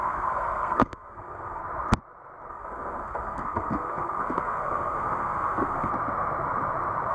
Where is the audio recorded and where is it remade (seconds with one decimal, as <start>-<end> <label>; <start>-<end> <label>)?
0.0-1.6 remade; 1.6-2.5 recorded; 2.5-5.9 remade; 5.9-7.1 recorded